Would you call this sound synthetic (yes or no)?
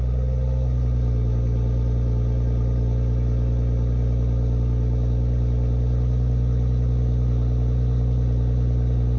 no